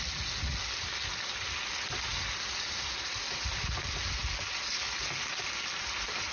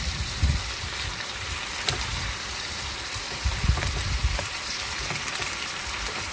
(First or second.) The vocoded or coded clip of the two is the second